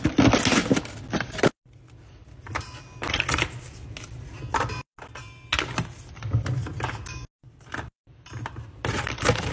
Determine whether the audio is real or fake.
real